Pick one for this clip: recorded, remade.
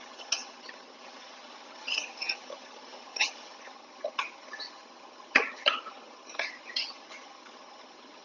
remade